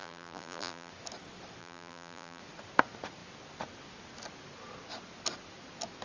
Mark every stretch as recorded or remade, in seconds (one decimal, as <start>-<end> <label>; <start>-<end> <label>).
0.0-0.9 remade; 0.9-1.6 recorded; 1.6-2.4 remade; 2.4-6.0 recorded